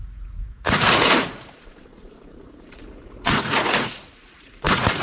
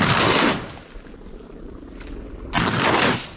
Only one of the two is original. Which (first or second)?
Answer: second